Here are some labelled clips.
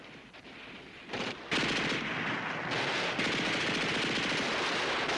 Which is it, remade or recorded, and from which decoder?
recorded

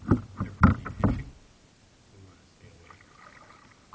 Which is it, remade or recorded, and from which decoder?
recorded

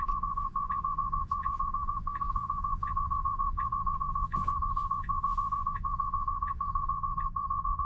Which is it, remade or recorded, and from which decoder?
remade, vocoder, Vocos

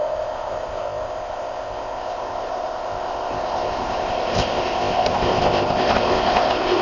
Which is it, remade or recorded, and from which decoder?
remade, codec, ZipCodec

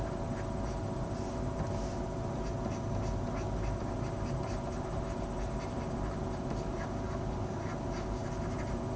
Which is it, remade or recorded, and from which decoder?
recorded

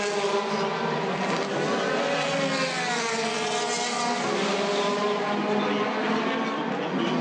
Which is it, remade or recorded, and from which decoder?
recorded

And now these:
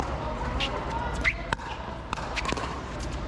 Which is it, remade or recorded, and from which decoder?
recorded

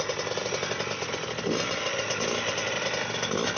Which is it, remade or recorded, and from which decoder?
recorded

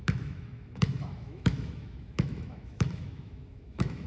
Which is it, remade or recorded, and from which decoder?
remade, autoencoder, DAC-VAE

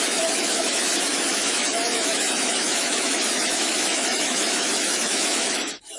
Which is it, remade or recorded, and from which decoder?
remade, autoencoder, DAC-VAE